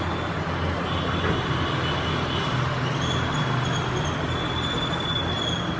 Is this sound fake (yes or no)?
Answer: no